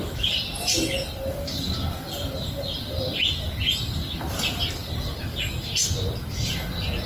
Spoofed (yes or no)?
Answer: no